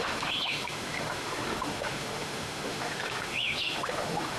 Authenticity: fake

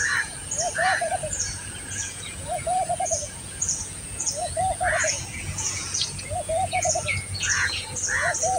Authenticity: fake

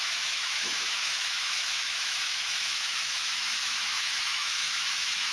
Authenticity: fake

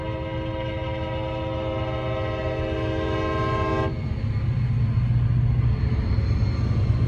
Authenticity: real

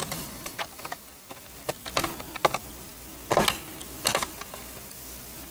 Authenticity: real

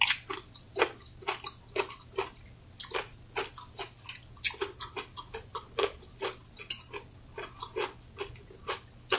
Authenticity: real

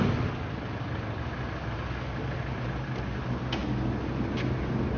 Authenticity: real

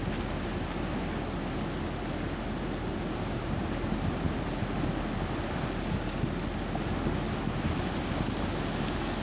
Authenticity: real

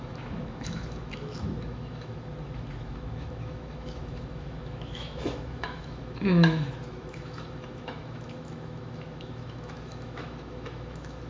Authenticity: fake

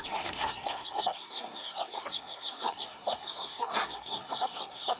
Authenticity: fake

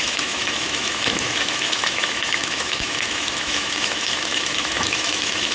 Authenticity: fake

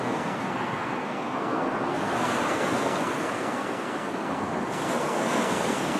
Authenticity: fake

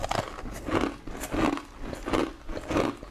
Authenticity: real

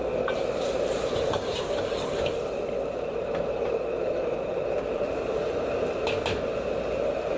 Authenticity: real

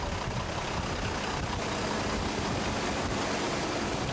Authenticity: real